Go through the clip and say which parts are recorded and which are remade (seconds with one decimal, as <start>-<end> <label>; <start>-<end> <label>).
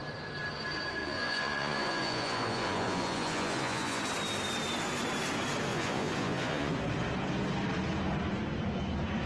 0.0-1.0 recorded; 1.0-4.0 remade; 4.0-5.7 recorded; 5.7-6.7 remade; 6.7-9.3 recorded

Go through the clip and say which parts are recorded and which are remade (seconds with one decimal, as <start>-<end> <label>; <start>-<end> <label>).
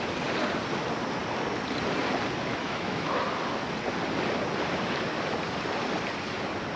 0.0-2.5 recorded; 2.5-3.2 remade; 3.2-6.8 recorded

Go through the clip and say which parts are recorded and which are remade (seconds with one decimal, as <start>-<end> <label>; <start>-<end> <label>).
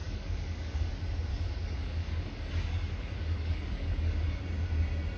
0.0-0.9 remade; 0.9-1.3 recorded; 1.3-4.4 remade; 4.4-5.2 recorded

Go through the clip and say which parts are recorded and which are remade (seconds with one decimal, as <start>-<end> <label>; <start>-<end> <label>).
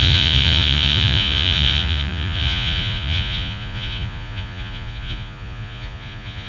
0.0-6.5 remade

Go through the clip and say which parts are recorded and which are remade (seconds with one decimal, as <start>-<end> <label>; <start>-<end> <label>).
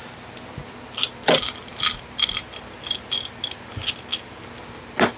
0.0-5.2 recorded